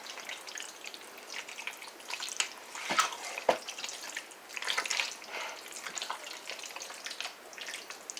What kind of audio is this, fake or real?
real